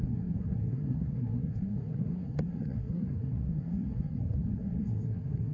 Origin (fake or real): fake